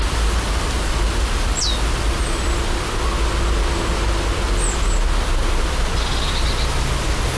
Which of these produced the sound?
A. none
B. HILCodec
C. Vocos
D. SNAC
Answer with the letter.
A